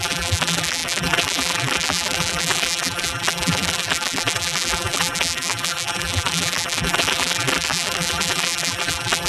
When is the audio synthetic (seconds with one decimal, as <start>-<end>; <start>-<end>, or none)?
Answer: 0.0-9.3